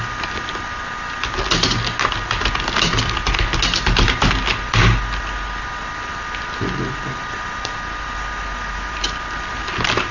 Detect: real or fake real